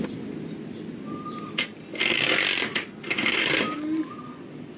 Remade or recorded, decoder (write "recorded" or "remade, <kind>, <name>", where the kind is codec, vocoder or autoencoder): recorded